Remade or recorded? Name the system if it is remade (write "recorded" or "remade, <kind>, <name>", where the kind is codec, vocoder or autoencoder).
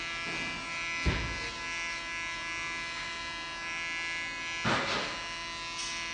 recorded